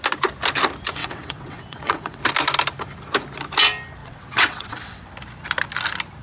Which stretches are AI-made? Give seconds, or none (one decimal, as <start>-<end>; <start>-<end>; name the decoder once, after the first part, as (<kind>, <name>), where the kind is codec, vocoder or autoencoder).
1.0-2.2 (vocoder, WaveNeXt); 4.0-5.1